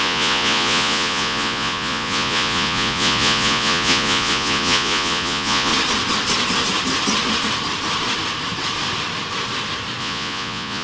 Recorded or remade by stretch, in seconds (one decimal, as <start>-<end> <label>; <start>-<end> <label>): 0.0-5.7 remade; 5.7-10.0 recorded; 10.0-10.8 remade